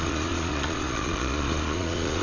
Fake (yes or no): yes